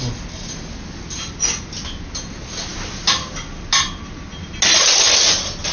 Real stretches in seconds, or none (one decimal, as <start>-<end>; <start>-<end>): 0.0-5.7